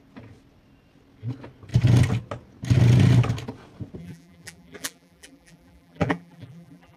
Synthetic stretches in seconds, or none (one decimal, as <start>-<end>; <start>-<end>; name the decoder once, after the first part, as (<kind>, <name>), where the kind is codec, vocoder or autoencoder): 4.0-7.0 (vocoder, BigVGAN v2)